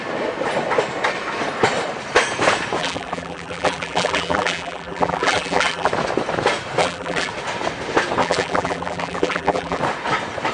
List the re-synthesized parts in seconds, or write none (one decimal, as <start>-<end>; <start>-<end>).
2.8-5.9; 6.8-7.3; 8.2-9.8